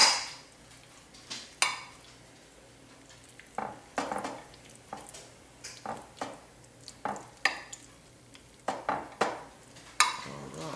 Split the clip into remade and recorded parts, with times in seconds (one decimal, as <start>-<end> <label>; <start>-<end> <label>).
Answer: 0.0-10.8 recorded